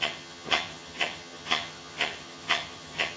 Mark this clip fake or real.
fake